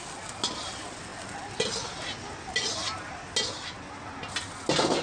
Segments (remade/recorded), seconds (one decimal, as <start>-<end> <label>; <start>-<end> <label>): 0.0-5.0 recorded